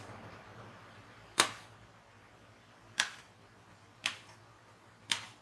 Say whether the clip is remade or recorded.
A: recorded